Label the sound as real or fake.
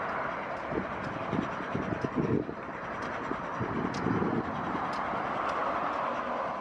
real